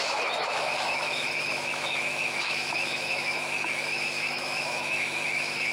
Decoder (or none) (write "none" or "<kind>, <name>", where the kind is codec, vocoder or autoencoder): autoencoder, DAC-VAE